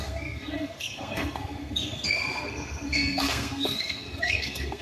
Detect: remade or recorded remade